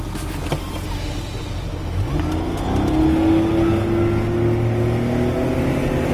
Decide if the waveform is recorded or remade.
recorded